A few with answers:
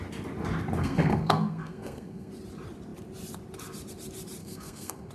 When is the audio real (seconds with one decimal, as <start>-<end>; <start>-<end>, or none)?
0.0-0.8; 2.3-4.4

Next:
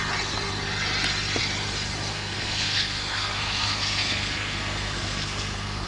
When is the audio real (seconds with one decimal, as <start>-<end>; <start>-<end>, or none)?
0.0-2.1

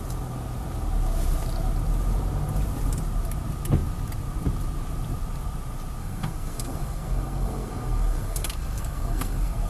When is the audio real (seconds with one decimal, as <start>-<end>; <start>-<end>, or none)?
0.0-6.0

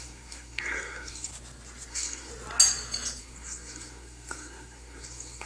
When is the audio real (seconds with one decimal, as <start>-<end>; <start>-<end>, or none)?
1.3-1.9; 2.3-3.2

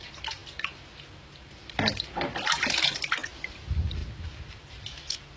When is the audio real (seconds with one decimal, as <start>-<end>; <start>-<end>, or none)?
0.0-5.4

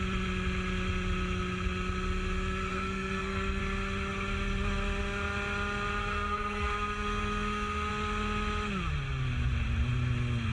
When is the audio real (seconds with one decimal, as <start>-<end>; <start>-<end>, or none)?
0.0-2.7; 3.6-6.0; 7.9-10.5

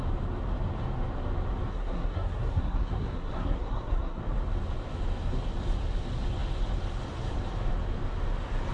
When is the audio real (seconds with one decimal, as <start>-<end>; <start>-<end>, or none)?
0.0-1.7; 4.2-8.7